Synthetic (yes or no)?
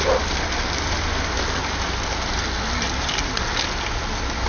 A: no